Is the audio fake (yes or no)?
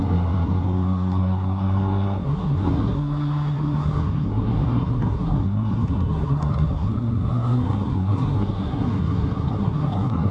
yes